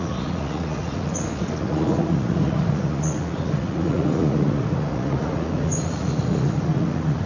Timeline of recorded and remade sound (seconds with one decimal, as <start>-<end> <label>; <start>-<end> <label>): 0.0-7.3 remade